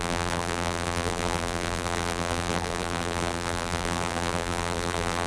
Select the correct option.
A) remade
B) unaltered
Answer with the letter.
A